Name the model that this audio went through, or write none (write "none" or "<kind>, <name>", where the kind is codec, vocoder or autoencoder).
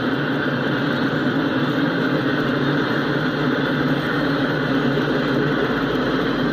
none